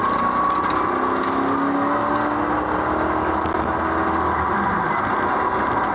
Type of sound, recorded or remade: recorded